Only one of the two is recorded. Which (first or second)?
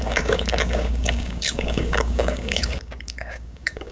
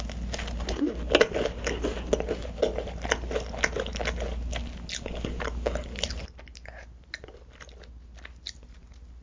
second